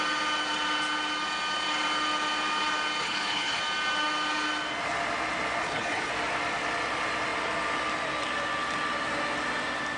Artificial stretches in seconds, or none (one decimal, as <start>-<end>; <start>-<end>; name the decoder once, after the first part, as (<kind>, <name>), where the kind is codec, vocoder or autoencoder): 3.0-3.6 (codec, HILCodec); 5.6-6.1